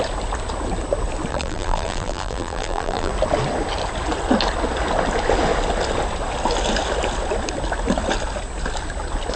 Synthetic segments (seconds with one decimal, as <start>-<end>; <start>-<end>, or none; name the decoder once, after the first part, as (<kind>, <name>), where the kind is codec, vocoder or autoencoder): 1.3-3.1 (vocoder, BigVGAN v2)